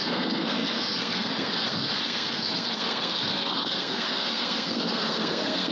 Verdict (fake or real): fake